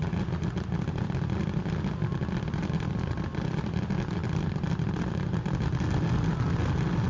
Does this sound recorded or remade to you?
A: recorded